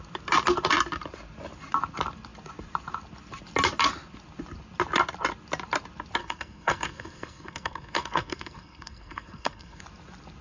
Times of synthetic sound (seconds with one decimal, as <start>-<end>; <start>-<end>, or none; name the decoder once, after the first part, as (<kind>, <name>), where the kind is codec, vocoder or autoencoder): 6.2-9.8 (codec, SNAC)